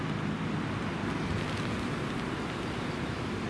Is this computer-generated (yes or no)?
no